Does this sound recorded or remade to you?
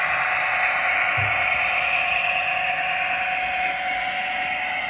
recorded